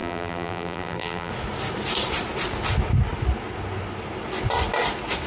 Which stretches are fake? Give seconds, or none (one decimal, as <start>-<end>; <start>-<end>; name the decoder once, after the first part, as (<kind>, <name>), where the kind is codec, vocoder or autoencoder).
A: 0.0-1.3 (vocoder, BigVGAN v2)